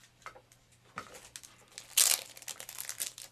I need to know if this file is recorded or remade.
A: recorded